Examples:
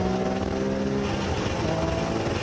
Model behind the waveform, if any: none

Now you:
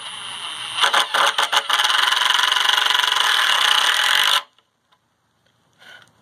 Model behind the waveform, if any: none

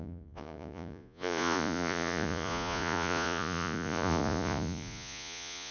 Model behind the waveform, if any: vocoder, Vocos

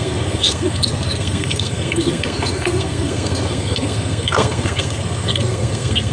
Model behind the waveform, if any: codec, SNAC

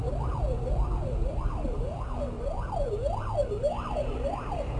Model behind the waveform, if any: none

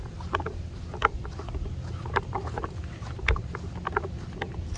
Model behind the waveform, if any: none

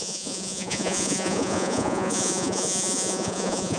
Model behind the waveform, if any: vocoder, Vocos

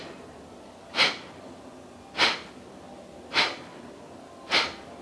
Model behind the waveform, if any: none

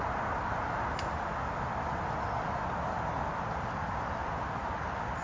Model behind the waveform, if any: none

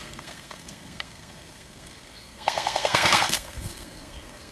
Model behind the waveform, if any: codec, SNAC